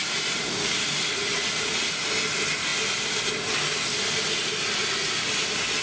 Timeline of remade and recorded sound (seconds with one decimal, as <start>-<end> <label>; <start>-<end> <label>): 0.0-1.4 remade; 1.4-5.8 recorded

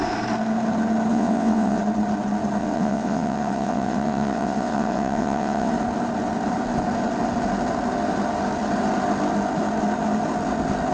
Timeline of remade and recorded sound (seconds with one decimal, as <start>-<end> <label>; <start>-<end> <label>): 0.0-1.1 recorded; 1.1-1.8 remade; 1.8-2.6 recorded; 2.6-5.7 remade; 5.7-10.9 recorded

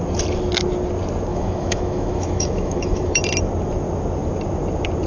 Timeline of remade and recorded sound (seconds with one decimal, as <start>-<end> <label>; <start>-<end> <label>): 0.0-1.3 recorded; 1.3-3.2 remade; 3.2-5.1 recorded

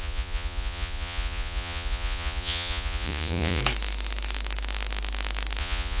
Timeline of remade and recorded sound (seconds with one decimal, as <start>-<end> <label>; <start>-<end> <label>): 0.0-3.6 remade; 3.6-5.6 recorded; 5.6-6.0 remade

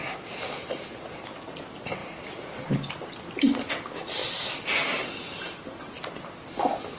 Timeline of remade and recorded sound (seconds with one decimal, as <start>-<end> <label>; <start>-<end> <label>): 0.0-7.0 recorded

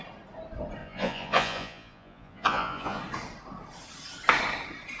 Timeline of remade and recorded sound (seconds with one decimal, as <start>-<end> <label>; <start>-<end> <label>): 0.0-0.8 recorded; 0.8-3.0 remade; 3.0-5.0 recorded

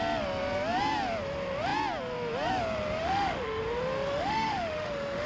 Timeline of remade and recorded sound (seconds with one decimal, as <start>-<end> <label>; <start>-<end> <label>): 0.0-3.0 recorded; 3.0-3.6 remade; 3.6-4.1 recorded; 4.1-5.3 remade